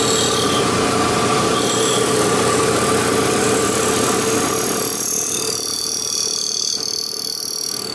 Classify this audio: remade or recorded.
recorded